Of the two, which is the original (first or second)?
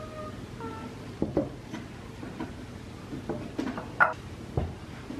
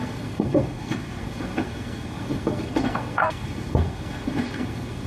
first